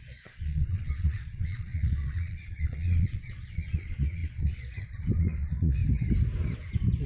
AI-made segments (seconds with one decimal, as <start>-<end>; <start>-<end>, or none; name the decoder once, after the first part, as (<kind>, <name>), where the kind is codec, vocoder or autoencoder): 0.0-5.8 (vocoder, Vocos)